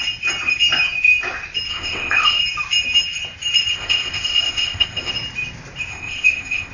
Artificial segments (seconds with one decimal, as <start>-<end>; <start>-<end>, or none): 1.7-2.4; 3.7-5.1; 5.9-6.7

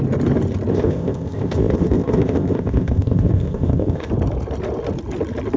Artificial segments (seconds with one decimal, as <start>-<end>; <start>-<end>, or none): 0.7-4.1

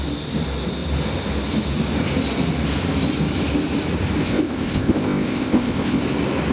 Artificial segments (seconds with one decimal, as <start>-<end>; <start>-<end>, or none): 4.2-6.0

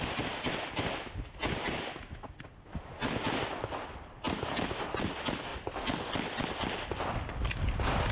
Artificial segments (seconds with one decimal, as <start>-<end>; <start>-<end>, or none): none

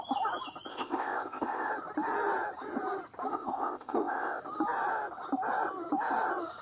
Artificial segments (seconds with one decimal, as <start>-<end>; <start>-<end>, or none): 0.7-1.7; 3.3-4.4

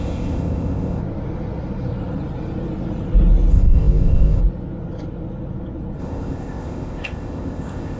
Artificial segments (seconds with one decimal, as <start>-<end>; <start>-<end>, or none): 0.0-1.0; 3.5-4.4; 6.0-8.0

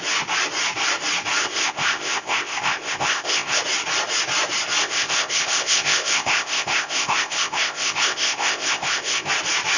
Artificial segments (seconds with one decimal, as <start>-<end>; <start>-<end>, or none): 1.4-3.6; 4.8-9.3

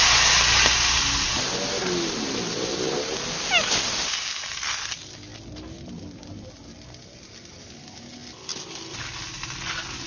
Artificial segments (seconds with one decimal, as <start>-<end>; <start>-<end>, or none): none